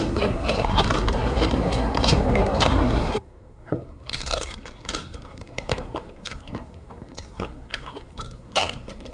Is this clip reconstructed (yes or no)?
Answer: yes